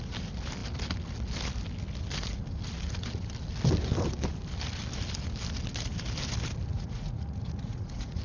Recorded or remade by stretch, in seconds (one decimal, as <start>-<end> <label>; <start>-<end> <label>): 0.0-6.7 recorded; 6.7-8.2 remade